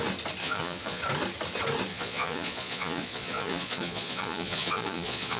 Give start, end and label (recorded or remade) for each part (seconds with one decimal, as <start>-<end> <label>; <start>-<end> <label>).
0.0-0.4 recorded; 0.4-1.0 remade; 1.0-1.9 recorded; 1.9-5.4 remade